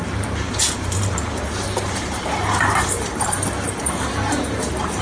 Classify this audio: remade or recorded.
remade